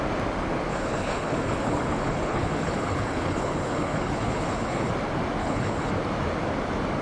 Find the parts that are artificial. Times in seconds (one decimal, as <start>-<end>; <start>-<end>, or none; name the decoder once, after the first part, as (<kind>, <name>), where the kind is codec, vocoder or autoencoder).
0.7-4.9 (codec, HILCodec); 5.4-5.9